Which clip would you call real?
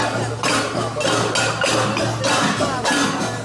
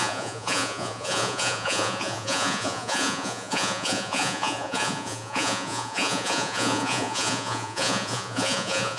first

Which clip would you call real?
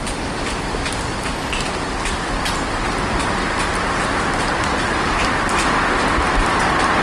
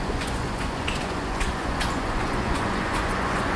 first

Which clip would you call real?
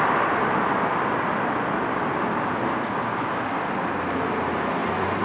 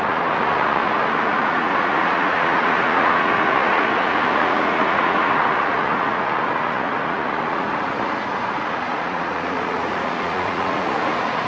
first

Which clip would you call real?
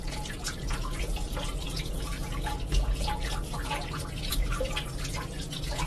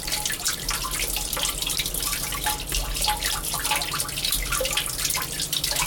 second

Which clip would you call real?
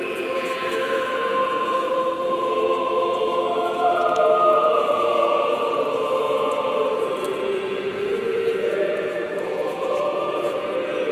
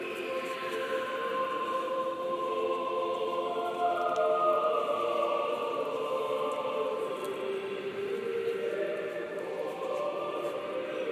second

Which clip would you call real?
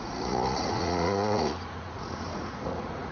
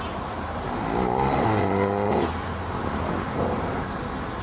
second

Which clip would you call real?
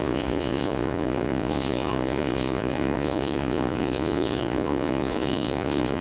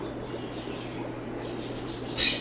second